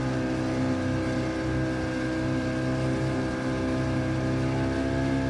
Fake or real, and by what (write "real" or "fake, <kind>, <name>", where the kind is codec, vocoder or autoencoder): real